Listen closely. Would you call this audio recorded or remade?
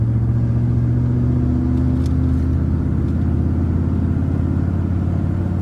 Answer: recorded